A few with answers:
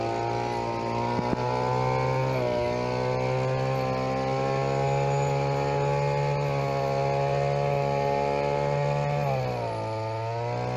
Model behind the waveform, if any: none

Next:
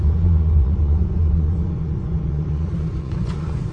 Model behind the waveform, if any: vocoder, Vocos